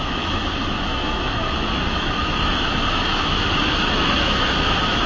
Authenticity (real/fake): fake